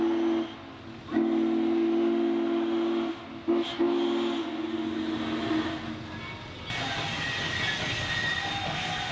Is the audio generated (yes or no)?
no